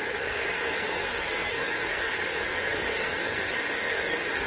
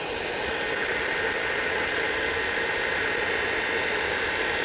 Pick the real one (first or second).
second